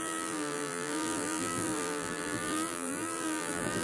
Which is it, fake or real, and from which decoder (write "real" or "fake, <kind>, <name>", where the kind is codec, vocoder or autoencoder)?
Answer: fake, vocoder, BigVGAN v2